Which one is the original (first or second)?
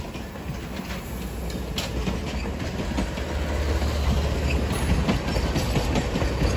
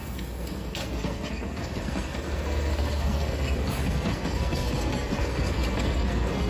first